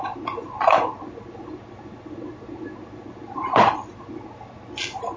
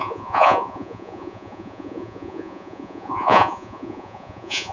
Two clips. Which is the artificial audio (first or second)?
second